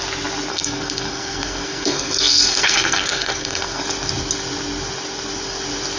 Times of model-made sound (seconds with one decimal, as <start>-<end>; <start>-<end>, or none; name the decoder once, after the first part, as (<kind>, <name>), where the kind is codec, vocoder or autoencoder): 0.5-3.8 (codec, SNAC)